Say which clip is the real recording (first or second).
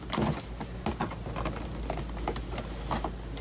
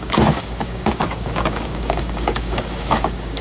first